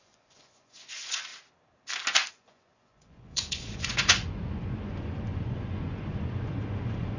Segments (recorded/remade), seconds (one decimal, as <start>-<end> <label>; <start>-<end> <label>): 0.0-1.3 remade; 1.3-2.3 recorded; 2.3-7.2 remade